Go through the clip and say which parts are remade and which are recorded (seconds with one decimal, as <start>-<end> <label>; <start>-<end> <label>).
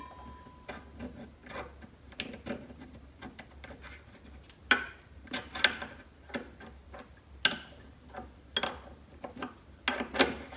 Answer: 0.0-10.6 recorded